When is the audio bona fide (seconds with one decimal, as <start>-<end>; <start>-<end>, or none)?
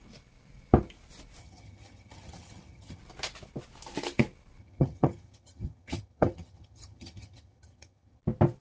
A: 0.0-1.4; 3.0-4.6; 8.2-8.6